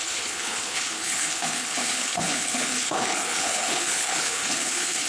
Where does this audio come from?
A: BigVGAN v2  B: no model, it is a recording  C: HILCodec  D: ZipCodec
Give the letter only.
C